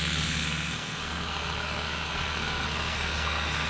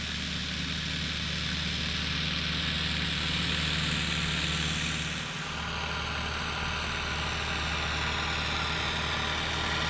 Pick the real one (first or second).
second